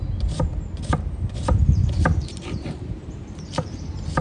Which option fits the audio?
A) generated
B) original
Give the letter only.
A